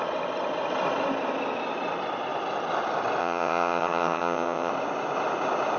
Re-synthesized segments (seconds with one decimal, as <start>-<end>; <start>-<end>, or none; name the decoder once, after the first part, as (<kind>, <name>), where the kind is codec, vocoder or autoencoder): 3.2-4.7 (vocoder, HiFi-GAN)